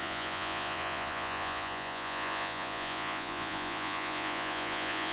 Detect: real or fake fake